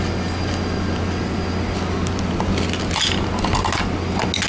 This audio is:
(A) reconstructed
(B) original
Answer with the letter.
B